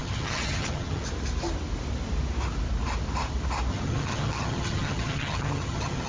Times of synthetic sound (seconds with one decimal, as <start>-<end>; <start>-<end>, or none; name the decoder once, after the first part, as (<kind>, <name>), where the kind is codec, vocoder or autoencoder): 0.0-1.0 (vocoder, HiFi-GAN); 3.7-6.1